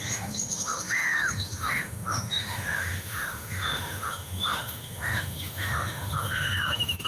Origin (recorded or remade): remade